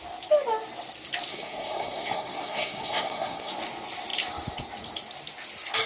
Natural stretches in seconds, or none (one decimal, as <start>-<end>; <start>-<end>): 0.0-1.3; 3.5-5.9